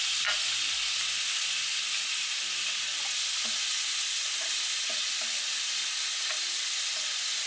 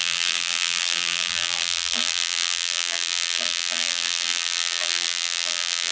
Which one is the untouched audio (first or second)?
first